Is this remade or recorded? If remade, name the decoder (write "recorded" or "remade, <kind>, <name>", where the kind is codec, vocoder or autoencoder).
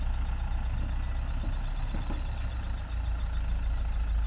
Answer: recorded